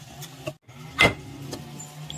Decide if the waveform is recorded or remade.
recorded